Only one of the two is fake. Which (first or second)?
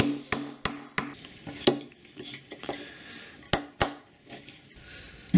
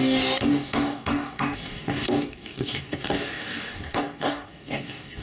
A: second